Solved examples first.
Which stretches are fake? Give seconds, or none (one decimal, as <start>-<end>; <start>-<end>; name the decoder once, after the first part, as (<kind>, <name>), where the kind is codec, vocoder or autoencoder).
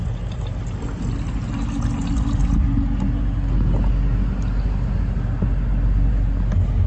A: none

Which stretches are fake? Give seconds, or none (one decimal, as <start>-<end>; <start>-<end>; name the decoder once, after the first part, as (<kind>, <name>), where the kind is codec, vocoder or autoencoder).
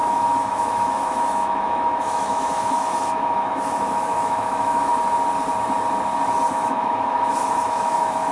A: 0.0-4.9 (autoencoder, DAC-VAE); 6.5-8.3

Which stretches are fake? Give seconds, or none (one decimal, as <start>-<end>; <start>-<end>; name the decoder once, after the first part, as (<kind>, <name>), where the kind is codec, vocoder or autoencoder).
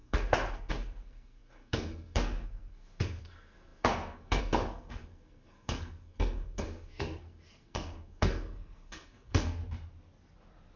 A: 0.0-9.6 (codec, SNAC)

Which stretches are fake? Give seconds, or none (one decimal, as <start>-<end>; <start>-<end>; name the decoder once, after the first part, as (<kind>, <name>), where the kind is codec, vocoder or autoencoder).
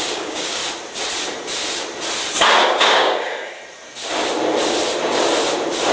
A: 0.0-0.6 (codec, DAC); 2.8-3.6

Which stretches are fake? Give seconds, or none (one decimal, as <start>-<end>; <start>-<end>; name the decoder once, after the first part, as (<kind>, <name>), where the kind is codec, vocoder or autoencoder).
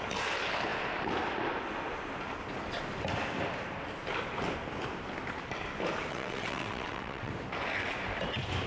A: 6.1-7.3 (vocoder, WaveNeXt)